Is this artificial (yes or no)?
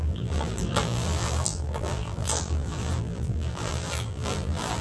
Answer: yes